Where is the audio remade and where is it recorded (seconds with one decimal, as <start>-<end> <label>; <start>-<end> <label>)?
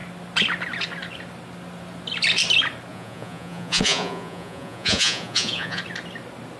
0.0-2.9 recorded; 2.9-5.8 remade; 5.8-6.6 recorded